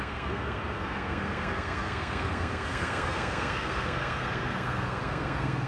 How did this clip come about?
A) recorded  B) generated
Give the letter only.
B